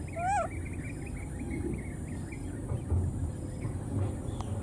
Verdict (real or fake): real